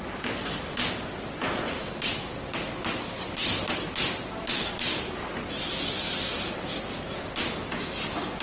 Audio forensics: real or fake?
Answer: real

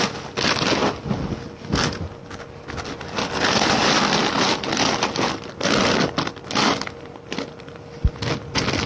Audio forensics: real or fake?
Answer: real